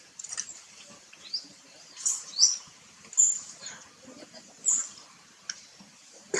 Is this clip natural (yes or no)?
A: yes